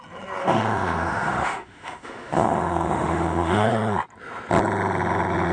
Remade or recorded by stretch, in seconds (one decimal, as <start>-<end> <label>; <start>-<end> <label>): 0.0-0.4 recorded; 0.4-3.7 remade; 3.7-5.5 recorded